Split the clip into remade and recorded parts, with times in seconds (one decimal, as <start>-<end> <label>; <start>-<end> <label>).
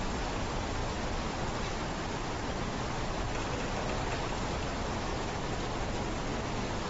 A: 0.0-6.9 recorded